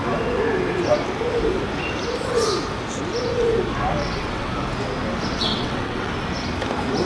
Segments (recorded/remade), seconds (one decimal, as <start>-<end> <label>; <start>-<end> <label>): 0.0-4.0 recorded; 4.0-4.5 remade; 4.5-5.4 recorded; 5.4-6.1 remade; 6.1-7.1 recorded